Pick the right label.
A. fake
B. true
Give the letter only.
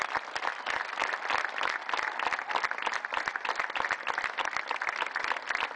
B